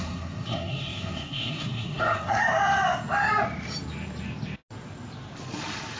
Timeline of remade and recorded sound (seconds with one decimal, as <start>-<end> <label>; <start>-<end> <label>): 0.0-2.4 remade; 2.4-6.0 recorded